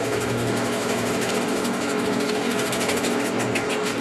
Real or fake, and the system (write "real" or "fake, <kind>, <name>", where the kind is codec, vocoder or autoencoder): fake, codec, DAC